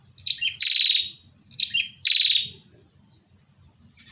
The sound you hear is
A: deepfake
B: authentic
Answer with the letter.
A